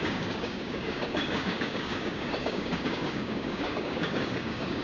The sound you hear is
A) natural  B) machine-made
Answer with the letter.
B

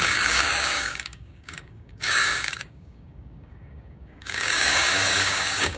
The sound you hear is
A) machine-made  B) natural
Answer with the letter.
A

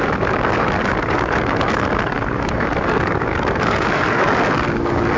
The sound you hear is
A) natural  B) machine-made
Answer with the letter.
B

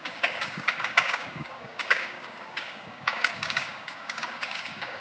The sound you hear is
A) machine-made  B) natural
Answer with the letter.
A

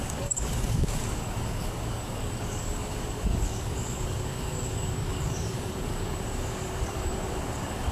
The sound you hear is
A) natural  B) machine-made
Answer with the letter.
B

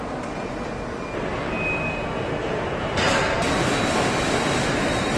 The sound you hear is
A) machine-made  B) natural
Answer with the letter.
B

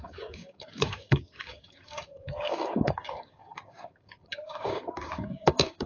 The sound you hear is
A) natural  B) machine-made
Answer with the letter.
B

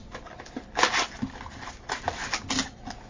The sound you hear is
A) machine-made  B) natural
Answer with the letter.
B